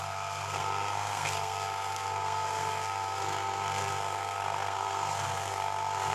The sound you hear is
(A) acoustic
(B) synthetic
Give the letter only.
B